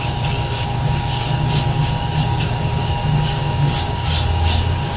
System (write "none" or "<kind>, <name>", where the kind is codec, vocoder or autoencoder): codec, DAC